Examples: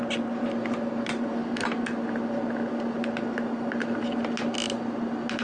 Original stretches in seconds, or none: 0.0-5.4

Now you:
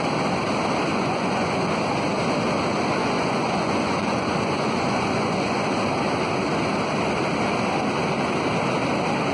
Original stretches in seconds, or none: 0.0-0.9; 1.7-3.0; 5.9-9.3

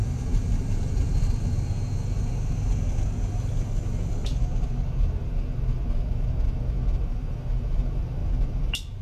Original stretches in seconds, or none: 1.2-9.0